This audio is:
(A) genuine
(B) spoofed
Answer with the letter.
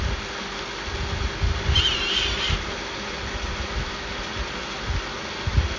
A